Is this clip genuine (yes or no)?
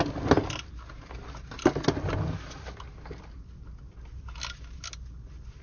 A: yes